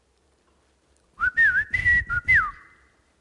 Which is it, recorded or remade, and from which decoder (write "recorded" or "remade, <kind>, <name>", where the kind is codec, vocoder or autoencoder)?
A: recorded